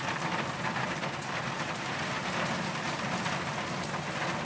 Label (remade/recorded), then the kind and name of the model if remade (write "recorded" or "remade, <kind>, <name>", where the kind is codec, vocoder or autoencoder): recorded